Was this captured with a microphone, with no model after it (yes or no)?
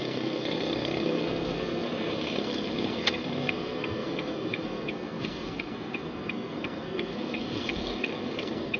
no